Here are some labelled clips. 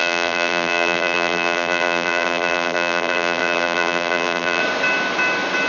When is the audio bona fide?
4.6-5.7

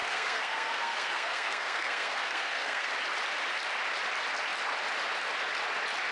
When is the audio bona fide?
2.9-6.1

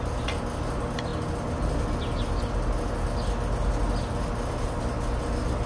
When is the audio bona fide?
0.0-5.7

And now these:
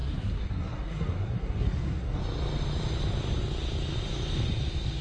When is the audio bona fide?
2.2-5.0